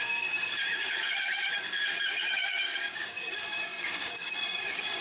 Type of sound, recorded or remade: remade